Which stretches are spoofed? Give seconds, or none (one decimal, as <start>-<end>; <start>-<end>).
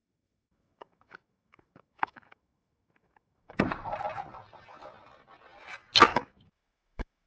0.0-3.6; 6.1-7.3